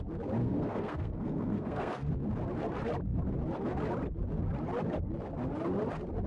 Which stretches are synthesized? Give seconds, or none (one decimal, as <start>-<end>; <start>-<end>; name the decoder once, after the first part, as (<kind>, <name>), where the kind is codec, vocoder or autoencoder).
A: 0.4-2.1 (codec, SNAC)